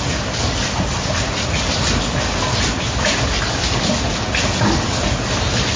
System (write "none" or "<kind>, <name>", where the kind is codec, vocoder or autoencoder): none